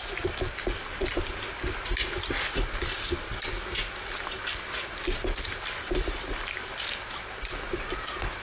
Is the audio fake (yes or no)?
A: no